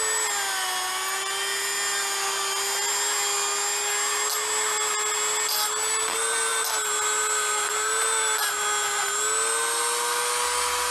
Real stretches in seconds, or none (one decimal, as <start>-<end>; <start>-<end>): 0.0-10.9

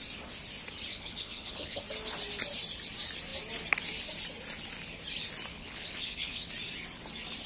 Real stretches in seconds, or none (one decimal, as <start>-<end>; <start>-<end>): 0.0-0.9; 1.8-5.5; 6.5-7.5

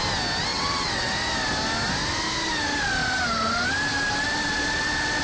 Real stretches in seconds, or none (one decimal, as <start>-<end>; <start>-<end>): 0.0-0.5; 1.1-5.2

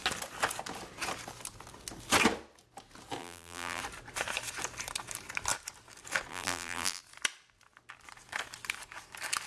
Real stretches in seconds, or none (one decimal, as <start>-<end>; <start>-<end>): 0.0-3.2; 3.8-6.3; 7.0-9.5

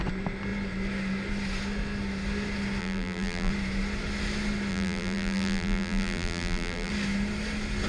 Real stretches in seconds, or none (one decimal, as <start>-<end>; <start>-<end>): 0.0-2.8; 3.5-4.7; 6.9-7.9

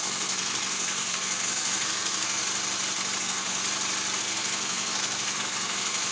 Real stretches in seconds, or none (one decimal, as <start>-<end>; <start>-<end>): 2.4-3.2; 3.6-4.2

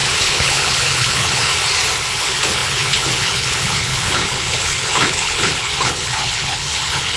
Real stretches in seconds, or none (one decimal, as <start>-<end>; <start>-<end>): 1.5-2.2